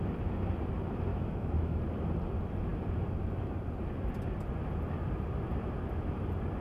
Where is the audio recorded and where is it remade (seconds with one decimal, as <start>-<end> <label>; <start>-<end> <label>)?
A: 0.0-1.1 recorded; 1.1-1.8 remade; 1.8-6.6 recorded